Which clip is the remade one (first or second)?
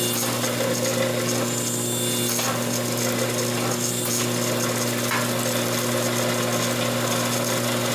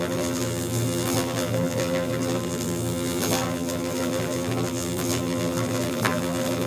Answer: second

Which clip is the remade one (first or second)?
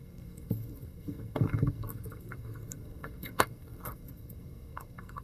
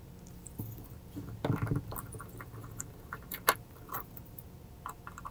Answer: first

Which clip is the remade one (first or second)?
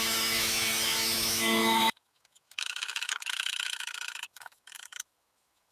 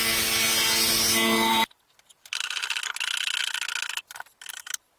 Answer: first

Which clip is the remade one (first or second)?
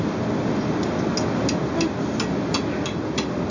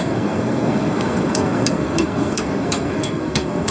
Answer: second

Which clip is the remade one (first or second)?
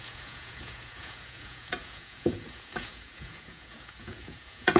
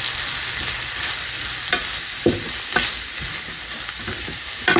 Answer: first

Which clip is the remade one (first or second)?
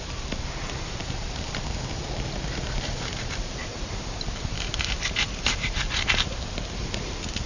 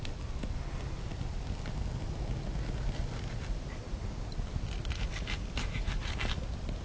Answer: first